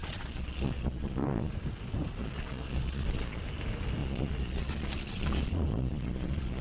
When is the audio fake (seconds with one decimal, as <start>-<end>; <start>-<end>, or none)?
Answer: 0.0-1.5; 2.2-3.4; 4.0-6.6